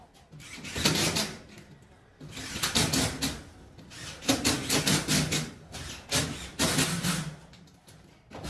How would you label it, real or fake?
real